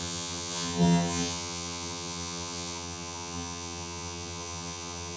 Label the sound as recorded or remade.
remade